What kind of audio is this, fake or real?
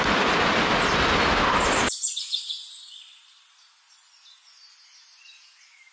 real